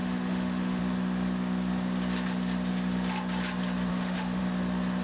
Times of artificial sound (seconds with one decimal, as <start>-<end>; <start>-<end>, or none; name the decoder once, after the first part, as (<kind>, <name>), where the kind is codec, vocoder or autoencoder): 0.0-0.8 (autoencoder, DAC-VAE); 3.9-4.4